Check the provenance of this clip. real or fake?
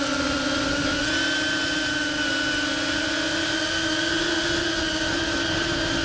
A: real